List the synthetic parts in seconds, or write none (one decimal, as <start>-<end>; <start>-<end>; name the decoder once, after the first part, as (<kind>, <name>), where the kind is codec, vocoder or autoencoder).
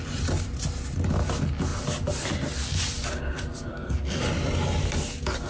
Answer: 3.7-4.2 (codec, SNAC)